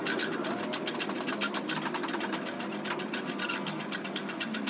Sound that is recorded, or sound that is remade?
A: recorded